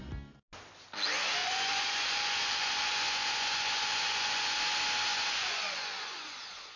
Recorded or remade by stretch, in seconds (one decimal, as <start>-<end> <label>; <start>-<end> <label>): 0.0-1.4 recorded; 1.4-4.6 remade; 4.6-5.1 recorded; 5.1-6.8 remade